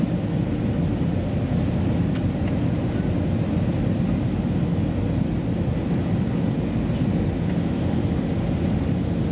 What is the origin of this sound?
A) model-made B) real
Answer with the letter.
B